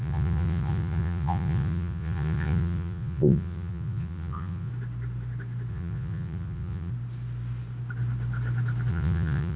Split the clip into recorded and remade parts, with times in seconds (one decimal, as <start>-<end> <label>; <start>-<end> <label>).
0.0-4.7 remade; 4.7-5.7 recorded; 5.7-6.9 remade; 6.9-8.9 recorded; 8.9-9.6 remade